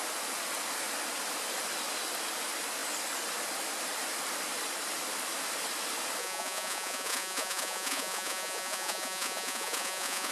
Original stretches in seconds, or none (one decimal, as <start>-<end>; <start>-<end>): 0.0-6.2

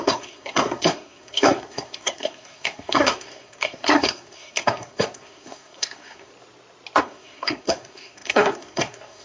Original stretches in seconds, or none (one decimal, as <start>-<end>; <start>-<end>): 6.3-7.0

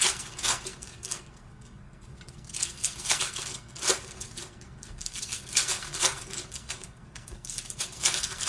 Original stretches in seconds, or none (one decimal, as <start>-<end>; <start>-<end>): none

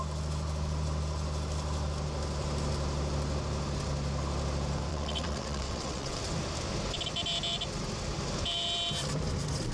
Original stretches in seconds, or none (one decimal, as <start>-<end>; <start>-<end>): 0.0-4.9; 6.2-9.7

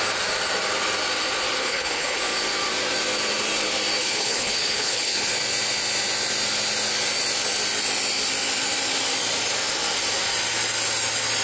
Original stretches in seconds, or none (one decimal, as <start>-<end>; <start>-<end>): 0.0-1.6; 2.2-4.0; 5.3-11.4